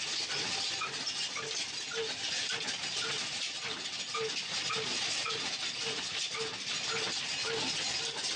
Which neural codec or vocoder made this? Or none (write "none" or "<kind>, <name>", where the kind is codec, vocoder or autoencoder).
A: none